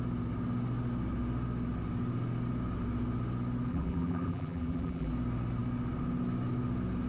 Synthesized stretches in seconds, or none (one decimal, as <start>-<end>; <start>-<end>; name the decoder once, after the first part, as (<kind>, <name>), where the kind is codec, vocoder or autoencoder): 3.7-5.1 (vocoder, BigVGAN v2)